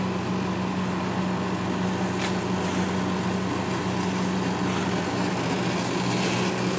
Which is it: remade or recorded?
recorded